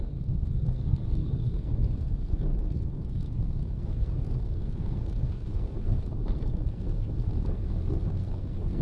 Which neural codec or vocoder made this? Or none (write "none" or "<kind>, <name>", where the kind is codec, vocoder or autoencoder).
codec, SNAC